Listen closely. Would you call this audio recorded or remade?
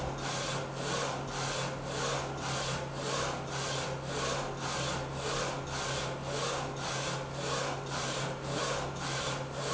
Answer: recorded